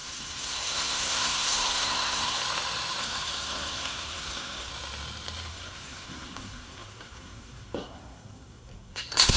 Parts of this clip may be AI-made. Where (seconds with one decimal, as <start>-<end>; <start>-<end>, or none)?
0.0-2.4; 3.0-4.7; 5.5-9.4